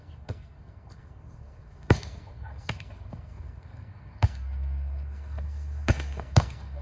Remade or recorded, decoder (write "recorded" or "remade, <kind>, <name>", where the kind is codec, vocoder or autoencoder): remade, codec, SNAC